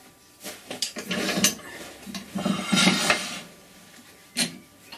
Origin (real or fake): real